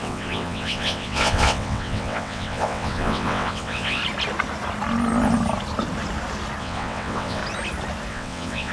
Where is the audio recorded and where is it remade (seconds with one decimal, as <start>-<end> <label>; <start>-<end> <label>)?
0.0-4.0 remade; 4.0-6.6 recorded; 6.6-7.4 remade; 7.4-8.1 recorded; 8.1-8.7 remade